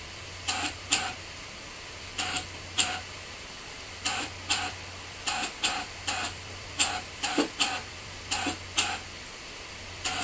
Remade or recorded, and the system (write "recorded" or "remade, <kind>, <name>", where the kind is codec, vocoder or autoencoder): remade, vocoder, BigVGAN v2